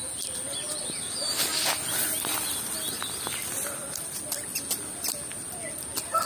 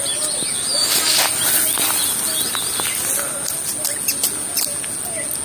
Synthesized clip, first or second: first